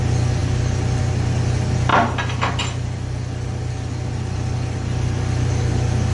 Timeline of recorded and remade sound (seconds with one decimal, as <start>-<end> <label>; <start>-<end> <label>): 0.0-6.1 recorded

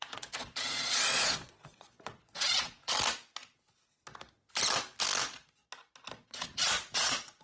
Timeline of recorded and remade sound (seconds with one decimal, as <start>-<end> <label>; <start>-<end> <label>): 0.0-2.8 remade; 2.8-6.3 recorded; 6.3-7.4 remade

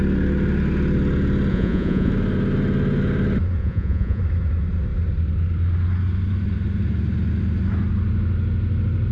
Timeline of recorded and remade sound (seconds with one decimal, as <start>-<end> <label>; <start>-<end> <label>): 0.0-1.5 recorded; 1.5-2.1 remade; 2.1-3.6 recorded; 3.6-4.2 remade; 4.2-9.1 recorded

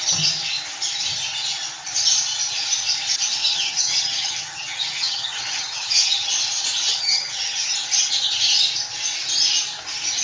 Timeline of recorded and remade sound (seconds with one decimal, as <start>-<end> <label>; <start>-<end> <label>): 0.0-3.4 recorded; 3.4-6.3 remade; 6.3-6.9 recorded; 6.9-7.7 remade; 7.7-10.2 recorded

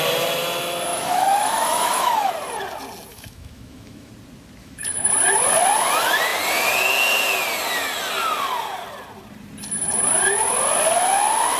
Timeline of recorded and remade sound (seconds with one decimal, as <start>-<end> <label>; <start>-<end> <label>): 0.0-0.9 recorded; 0.9-2.3 remade; 2.3-3.1 recorded; 3.1-4.1 remade; 4.1-4.6 recorded; 4.6-5.1 remade; 5.1-11.6 recorded

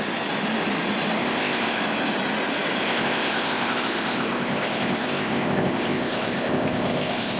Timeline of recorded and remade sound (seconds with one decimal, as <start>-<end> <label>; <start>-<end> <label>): 0.0-1.2 recorded; 1.2-1.8 remade; 1.8-2.8 recorded; 2.8-7.4 remade

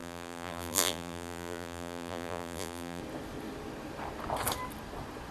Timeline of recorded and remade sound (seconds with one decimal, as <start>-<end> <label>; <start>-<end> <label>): 0.0-3.0 remade; 3.0-5.3 recorded

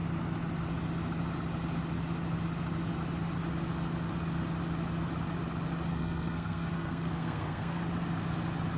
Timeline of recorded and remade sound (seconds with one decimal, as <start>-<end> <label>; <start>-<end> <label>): 0.0-5.9 recorded; 5.9-7.8 remade; 7.8-8.8 recorded